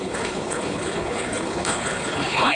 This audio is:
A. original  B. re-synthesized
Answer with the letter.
B